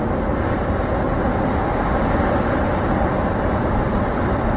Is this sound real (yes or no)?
yes